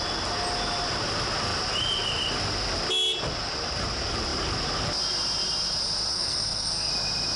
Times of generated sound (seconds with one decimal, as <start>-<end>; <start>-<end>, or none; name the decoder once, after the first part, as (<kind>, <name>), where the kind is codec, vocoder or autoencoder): 6.1-6.9 (codec, SNAC)